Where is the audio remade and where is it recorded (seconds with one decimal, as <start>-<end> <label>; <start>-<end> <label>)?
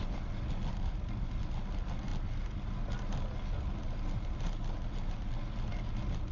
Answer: 0.0-6.3 recorded